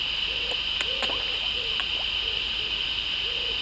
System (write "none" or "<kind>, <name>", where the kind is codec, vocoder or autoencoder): none